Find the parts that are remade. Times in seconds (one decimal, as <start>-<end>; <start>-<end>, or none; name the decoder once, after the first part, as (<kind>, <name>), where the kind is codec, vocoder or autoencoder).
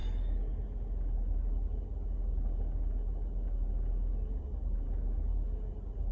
none